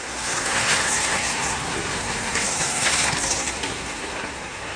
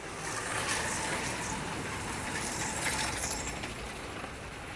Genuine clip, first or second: second